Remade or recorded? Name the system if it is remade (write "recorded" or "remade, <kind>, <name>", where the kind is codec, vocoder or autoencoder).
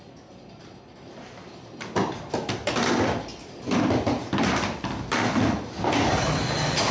recorded